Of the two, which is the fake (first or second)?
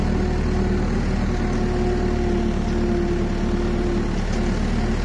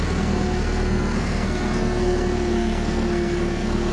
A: second